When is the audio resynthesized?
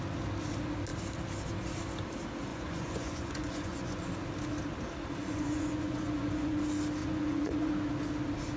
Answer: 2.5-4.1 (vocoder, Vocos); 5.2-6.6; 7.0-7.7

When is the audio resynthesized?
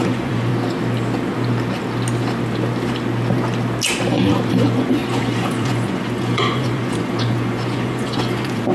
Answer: 0.0-0.5 (vocoder, Vocos); 4.5-8.7